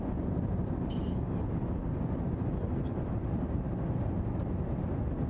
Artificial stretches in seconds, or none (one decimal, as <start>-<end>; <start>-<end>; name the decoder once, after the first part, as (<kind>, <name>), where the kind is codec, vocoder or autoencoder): none

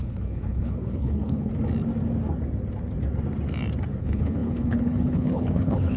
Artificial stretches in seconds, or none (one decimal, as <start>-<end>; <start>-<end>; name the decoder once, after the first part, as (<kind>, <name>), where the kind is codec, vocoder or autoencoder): 0.0-1.5 (codec, HILCodec); 4.0-6.0

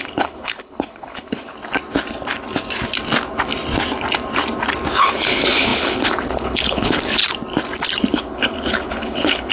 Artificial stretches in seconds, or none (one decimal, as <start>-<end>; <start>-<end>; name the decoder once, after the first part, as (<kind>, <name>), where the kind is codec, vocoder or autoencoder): 0.0-1.5 (codec, HILCodec); 4.9-7.2; 8.1-9.5

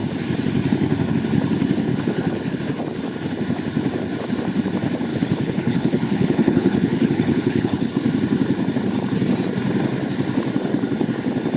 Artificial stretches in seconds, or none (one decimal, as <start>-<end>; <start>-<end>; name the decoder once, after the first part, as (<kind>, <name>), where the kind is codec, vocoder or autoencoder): 1.9-2.6 (codec, HILCodec); 5.1-7.9

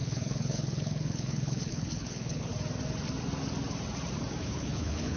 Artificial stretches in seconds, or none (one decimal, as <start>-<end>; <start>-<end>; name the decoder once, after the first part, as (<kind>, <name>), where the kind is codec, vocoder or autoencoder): 0.0-2.5 (codec, HILCodec); 4.4-5.2

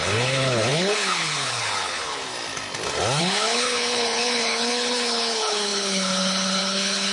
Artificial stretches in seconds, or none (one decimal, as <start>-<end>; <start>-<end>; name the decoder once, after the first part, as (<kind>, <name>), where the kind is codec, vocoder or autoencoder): 0.0-2.3 (codec, HILCodec); 3.2-7.1